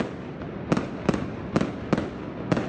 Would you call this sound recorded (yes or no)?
yes